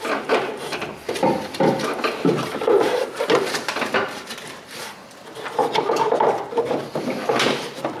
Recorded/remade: remade